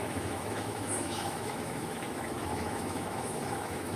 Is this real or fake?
fake